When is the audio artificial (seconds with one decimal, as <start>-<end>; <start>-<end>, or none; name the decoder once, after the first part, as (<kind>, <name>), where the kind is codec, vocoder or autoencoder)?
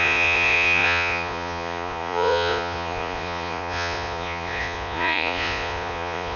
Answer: 0.0-6.4 (vocoder, Vocos)